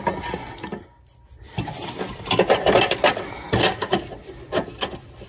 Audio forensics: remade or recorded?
recorded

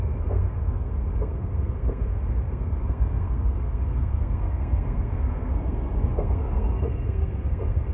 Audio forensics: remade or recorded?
remade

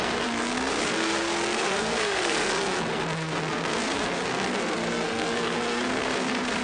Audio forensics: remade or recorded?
remade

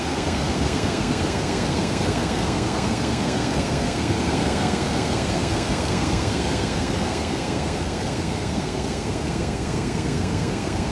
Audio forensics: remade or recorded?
remade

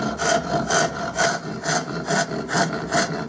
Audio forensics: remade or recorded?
recorded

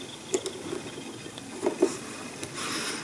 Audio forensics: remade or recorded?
recorded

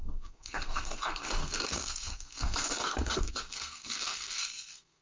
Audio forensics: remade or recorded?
remade